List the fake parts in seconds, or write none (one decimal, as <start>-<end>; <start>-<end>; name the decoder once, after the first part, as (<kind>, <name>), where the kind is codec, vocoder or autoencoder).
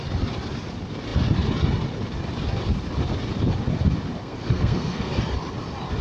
4.2-5.2 (codec, SNAC)